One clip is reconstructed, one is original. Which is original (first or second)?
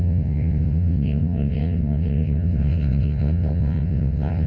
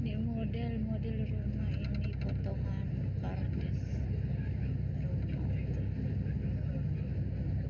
second